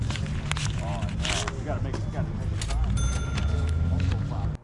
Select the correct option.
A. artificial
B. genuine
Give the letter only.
B